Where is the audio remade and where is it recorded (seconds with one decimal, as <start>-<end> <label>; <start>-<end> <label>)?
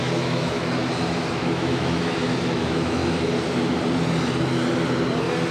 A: 0.0-0.8 remade; 0.8-1.3 recorded; 1.3-3.0 remade; 3.0-5.5 recorded